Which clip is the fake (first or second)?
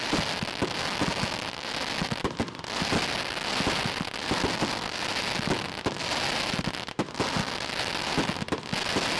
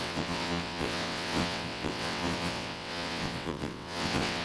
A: second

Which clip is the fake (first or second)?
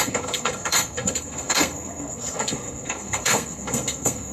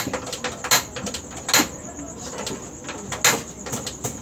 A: first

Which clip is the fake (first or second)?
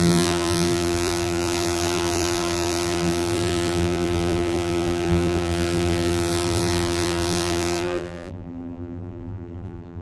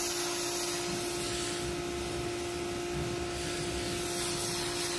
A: first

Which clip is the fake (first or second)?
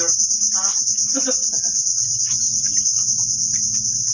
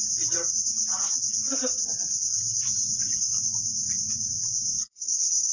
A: second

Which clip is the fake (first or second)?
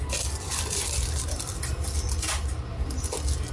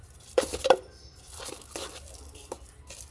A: second